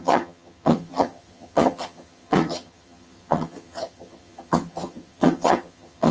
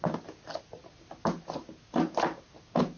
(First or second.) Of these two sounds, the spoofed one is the first